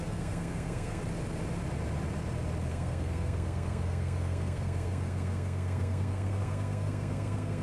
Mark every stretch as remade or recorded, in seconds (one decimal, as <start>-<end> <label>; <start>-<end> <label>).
0.0-1.0 remade; 1.0-2.7 recorded; 2.7-7.6 remade